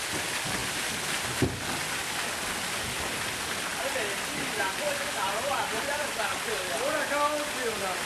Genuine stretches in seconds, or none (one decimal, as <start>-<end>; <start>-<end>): 0.0-3.7; 6.6-8.1